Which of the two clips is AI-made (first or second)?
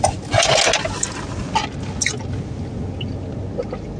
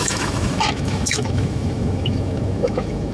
second